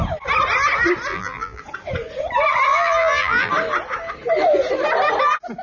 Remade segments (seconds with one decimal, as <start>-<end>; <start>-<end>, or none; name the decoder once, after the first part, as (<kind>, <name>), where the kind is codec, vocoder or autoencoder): 1.1-1.6 (vocoder, BigVGAN v2); 2.7-3.5